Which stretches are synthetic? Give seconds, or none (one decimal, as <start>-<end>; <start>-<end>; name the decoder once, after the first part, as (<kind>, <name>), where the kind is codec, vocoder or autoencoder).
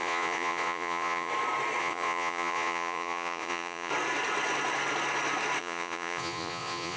0.0-1.3 (vocoder, Vocos); 1.8-3.9; 5.6-7.0